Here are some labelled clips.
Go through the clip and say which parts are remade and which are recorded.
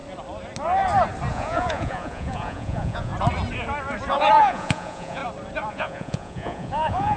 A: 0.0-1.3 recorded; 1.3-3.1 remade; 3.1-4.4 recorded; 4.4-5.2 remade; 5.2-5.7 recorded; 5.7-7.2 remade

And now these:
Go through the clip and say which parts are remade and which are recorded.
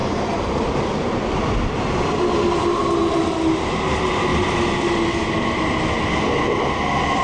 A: 0.0-7.2 recorded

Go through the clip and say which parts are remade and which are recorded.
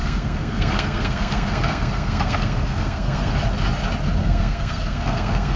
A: 0.0-3.3 remade; 3.3-4.2 recorded; 4.2-5.6 remade